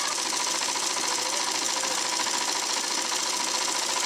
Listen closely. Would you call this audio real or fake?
real